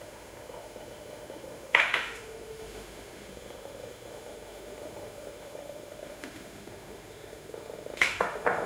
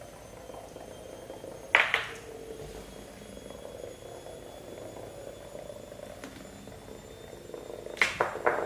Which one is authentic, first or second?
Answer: second